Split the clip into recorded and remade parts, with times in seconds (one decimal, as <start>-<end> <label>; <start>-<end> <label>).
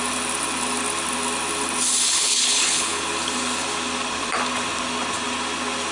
0.0-2.0 recorded; 2.0-3.0 remade; 3.0-5.9 recorded